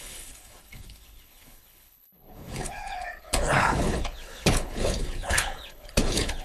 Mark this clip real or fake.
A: fake